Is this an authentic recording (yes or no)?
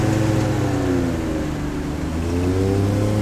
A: yes